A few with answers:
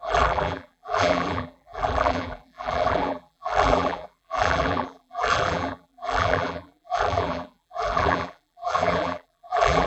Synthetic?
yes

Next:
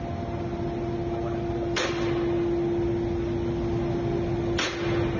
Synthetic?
no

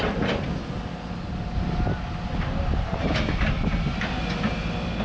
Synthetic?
no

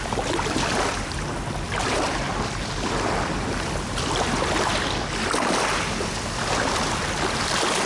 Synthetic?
no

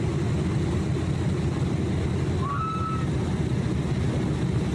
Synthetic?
no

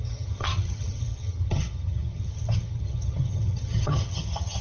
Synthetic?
yes